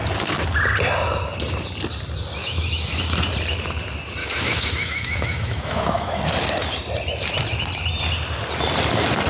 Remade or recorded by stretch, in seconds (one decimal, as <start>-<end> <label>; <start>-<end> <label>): 0.0-2.4 recorded; 2.4-3.0 remade; 3.0-4.2 recorded; 4.2-6.2 remade; 6.2-9.3 recorded